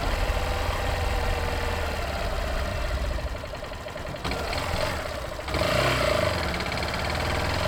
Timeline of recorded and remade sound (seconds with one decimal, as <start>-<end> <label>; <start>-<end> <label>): 0.0-2.7 recorded; 2.7-3.8 remade; 3.8-7.7 recorded